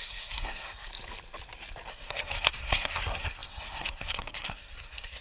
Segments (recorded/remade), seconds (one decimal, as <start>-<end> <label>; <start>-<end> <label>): 0.0-0.9 remade; 0.9-1.9 recorded; 1.9-5.2 remade